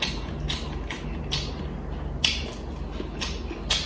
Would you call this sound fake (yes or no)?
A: no